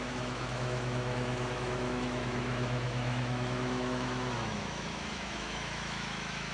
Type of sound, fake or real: fake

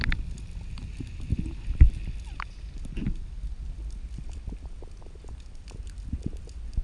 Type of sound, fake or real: real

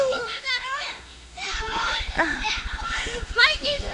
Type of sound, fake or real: fake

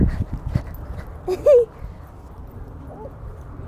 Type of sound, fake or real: real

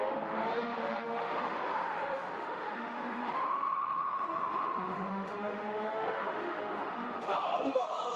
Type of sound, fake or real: fake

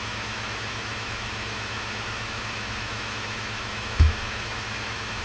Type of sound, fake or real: fake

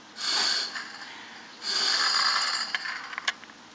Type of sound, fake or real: real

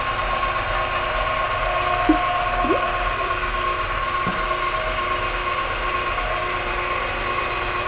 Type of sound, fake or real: real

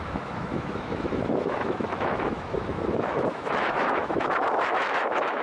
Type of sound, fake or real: fake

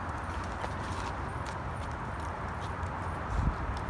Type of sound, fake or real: real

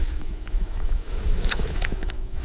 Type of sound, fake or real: fake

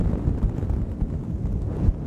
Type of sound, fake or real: real